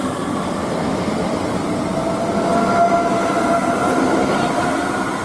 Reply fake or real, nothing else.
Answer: real